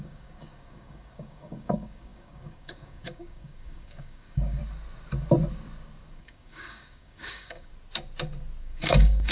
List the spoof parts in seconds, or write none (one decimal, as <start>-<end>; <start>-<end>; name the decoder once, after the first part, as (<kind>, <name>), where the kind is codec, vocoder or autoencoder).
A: 0.0-4.6 (codec, DAC); 6.1-7.7; 8.6-9.3